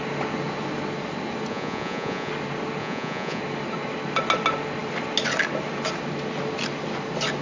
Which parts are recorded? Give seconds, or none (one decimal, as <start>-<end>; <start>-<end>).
0.0-1.5; 2.3-2.8; 3.4-7.4